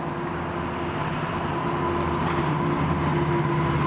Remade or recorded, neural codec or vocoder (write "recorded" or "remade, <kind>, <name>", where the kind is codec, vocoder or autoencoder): recorded